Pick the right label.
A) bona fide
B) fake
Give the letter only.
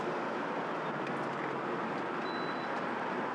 A